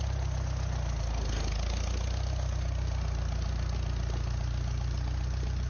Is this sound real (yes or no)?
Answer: yes